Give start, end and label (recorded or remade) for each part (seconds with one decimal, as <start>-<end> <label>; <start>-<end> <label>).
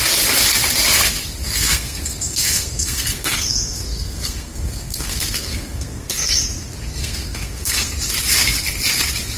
0.0-1.4 recorded; 1.4-6.4 remade; 6.4-7.0 recorded; 7.0-7.9 remade; 7.9-9.4 recorded